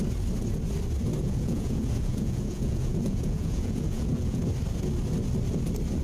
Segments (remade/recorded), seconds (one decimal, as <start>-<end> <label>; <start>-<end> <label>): 0.0-1.2 recorded; 1.2-4.4 remade; 4.4-6.0 recorded